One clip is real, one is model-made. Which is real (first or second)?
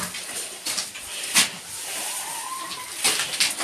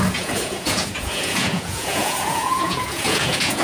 first